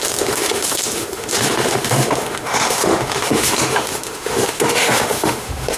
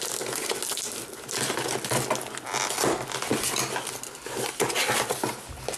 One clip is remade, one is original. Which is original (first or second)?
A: second